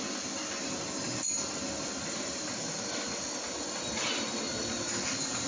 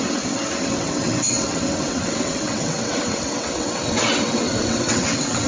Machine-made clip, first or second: second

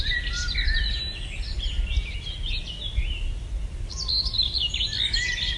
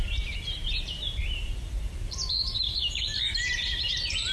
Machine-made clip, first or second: second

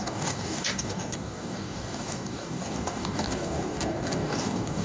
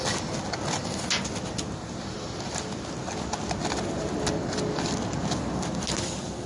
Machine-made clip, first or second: first